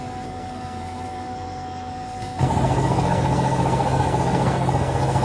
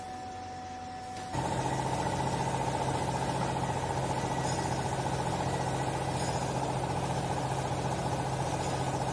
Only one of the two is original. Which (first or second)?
second